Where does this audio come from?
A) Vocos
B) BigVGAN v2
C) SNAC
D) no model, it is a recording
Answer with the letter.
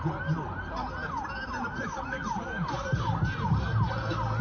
D